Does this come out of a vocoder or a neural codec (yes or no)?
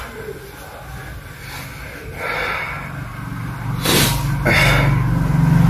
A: no